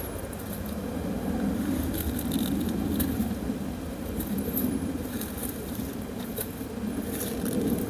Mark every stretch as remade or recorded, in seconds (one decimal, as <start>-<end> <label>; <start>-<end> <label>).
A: 0.0-5.4 recorded; 5.4-6.5 remade; 6.5-7.9 recorded